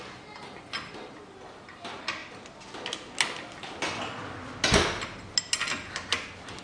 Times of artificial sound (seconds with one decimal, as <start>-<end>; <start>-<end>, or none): none